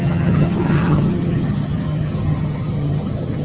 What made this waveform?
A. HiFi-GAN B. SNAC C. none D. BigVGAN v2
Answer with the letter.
A